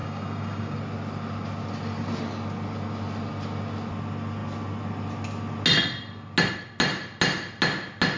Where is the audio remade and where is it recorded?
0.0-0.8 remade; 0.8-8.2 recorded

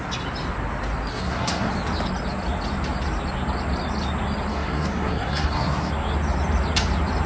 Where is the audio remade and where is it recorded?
0.0-1.1 recorded; 1.1-1.7 remade; 1.7-4.5 recorded; 4.5-5.9 remade; 5.9-7.3 recorded